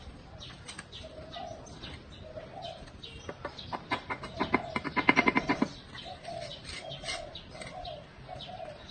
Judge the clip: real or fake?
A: real